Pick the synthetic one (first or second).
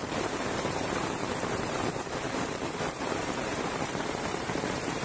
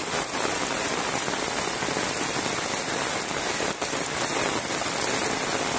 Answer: first